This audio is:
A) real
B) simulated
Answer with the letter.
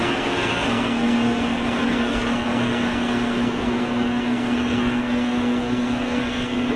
B